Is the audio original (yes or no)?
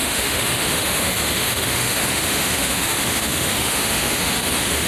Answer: no